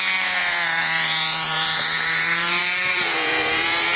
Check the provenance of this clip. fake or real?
fake